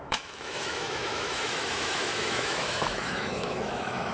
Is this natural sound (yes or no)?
no